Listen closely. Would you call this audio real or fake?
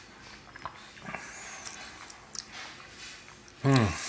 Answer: real